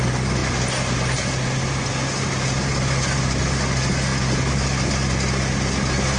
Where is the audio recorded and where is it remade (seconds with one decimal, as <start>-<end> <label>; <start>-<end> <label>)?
0.0-6.2 recorded